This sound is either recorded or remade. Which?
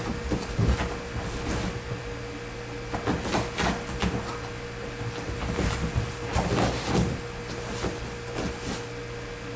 recorded